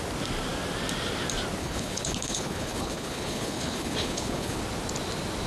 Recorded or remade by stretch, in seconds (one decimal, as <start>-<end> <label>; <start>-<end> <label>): 0.0-1.6 recorded; 1.6-4.6 remade; 4.6-5.5 recorded